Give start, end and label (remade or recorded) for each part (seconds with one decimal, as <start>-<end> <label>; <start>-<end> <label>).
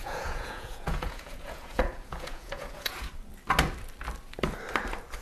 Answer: 0.0-3.1 remade; 3.1-5.2 recorded